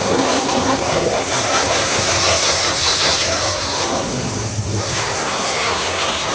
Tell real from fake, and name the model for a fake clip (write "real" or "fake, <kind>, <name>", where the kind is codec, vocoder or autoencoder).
fake, codec, SNAC